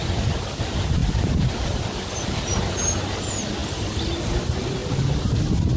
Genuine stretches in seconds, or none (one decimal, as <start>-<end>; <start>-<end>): 0.0-5.8